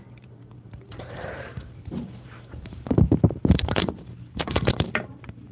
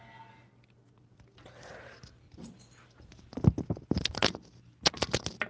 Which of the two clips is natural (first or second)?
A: second